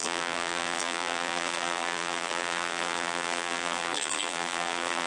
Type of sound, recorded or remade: remade